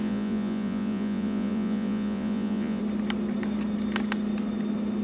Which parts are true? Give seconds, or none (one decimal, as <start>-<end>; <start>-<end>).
2.8-5.0